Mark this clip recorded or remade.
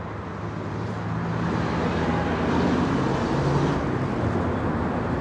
recorded